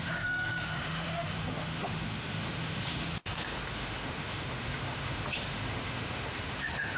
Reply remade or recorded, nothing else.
remade